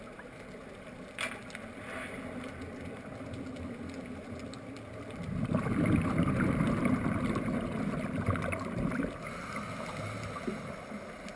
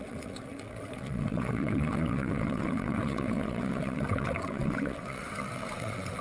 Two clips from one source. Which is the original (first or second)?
first